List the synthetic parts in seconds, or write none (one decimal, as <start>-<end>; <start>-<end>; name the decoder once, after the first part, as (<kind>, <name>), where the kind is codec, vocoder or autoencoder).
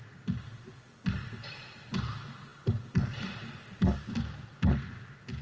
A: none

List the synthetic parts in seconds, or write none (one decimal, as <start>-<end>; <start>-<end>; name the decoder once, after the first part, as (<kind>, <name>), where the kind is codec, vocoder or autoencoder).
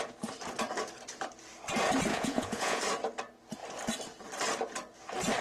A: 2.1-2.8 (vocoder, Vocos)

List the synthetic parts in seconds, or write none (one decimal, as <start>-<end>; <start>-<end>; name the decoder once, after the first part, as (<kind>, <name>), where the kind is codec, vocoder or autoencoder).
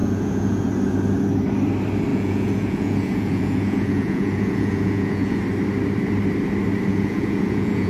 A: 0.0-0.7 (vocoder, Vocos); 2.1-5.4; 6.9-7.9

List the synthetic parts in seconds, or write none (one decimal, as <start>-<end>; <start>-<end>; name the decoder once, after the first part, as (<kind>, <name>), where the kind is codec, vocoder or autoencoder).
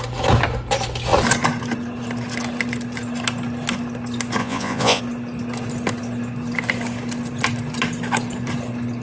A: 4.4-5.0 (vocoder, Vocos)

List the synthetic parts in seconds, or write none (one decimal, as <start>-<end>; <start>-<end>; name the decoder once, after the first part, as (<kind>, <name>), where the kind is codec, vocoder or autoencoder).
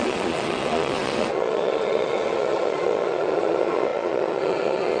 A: 0.0-5.0 (vocoder, Vocos)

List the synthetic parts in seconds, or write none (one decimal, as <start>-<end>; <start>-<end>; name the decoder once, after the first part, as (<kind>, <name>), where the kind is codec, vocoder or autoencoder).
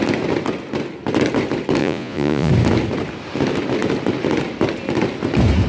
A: 1.8-2.5 (vocoder, Vocos)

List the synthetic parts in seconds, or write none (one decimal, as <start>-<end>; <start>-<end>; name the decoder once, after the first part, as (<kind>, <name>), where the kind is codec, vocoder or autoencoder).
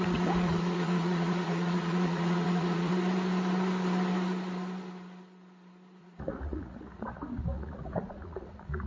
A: 0.0-2.9 (vocoder, Vocos); 6.0-8.9